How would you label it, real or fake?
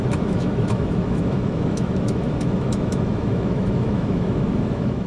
fake